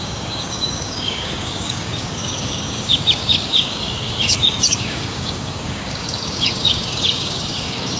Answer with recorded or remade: remade